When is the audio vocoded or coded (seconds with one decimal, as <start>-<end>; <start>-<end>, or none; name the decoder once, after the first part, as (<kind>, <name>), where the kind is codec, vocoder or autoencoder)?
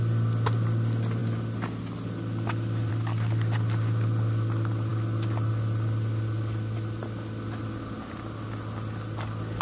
none